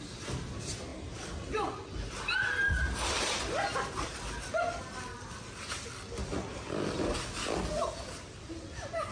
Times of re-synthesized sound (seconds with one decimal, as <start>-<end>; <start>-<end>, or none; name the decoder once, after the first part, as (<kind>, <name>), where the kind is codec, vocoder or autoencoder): none